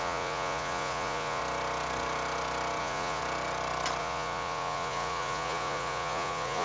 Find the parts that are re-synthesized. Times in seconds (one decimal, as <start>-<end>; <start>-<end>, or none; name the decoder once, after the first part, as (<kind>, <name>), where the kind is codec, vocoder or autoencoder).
0.0-1.4 (vocoder, Vocos); 2.8-3.2; 4.0-6.6